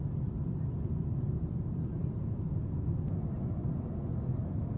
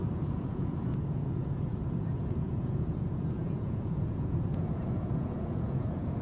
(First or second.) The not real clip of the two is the second